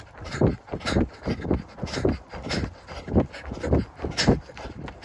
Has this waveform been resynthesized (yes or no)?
no